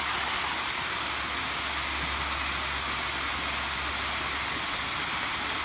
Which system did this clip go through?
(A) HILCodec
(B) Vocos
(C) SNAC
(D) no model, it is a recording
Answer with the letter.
D